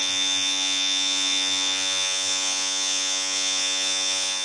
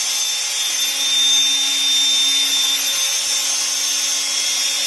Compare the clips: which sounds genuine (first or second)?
second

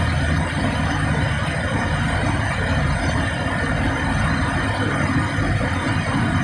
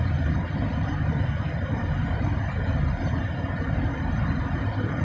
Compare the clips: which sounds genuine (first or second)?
first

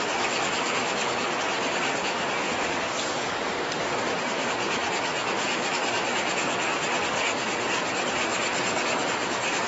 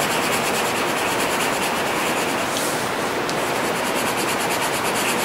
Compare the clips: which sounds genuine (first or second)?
second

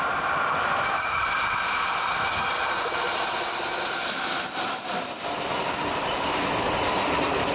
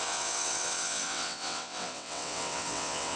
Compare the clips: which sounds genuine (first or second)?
first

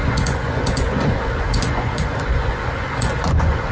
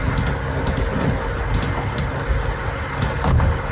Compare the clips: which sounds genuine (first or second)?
second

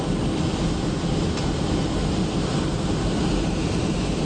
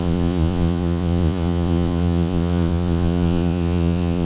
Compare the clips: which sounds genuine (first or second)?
first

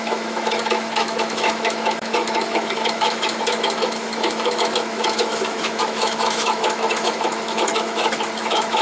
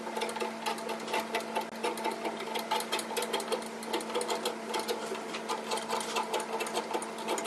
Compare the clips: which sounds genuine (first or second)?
second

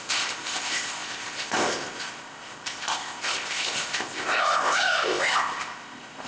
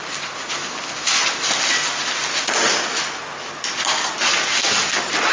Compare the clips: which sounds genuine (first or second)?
second